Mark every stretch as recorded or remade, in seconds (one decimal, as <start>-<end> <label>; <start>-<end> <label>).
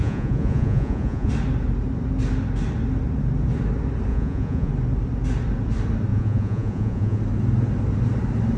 0.0-1.3 remade; 1.3-4.1 recorded; 4.1-4.7 remade; 4.7-6.1 recorded; 6.1-7.2 remade; 7.2-8.6 recorded